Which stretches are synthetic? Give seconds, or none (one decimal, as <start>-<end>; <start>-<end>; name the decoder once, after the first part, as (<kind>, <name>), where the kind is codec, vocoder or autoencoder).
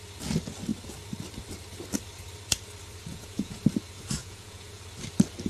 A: 3.1-3.6 (vocoder, Vocos); 4.2-4.8